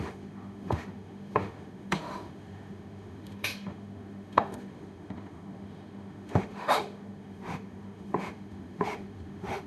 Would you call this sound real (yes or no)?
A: no